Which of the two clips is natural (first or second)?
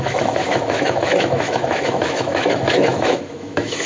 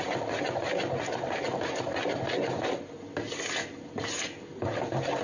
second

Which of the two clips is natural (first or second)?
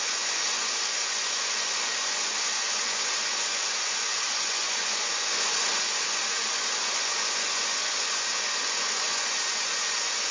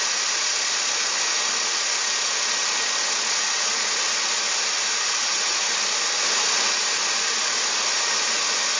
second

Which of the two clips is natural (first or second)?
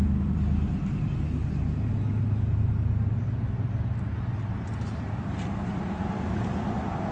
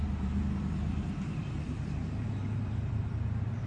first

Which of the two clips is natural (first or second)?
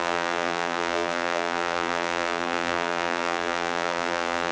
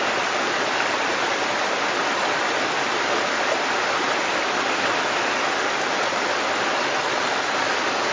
second